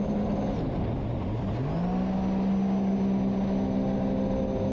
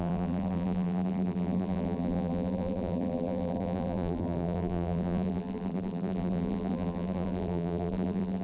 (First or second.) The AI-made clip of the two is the second